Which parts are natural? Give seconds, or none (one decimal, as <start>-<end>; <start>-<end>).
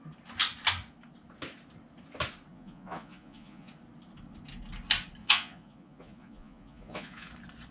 0.0-2.5; 3.7-5.2; 7.3-7.7